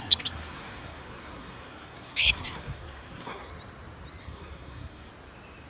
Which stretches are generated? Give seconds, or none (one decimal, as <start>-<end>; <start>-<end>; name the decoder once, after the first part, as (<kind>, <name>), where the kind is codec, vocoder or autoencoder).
0.0-3.5 (codec, SNAC); 4.2-5.1